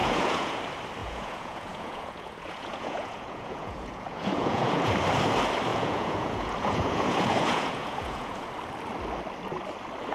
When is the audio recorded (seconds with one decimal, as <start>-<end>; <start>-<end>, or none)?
0.6-1.0; 4.9-5.7; 8.5-10.1